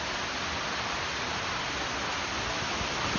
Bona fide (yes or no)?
yes